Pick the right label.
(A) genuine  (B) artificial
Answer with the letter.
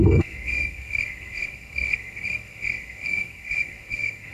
B